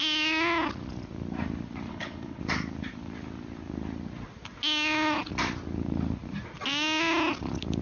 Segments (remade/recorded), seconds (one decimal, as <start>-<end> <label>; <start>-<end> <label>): 0.0-1.9 recorded; 1.9-2.4 remade; 2.4-7.8 recorded